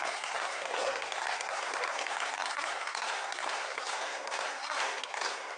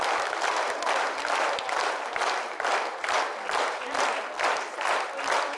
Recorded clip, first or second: second